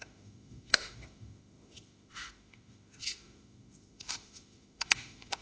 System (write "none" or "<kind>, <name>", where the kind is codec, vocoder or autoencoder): autoencoder, DAC-VAE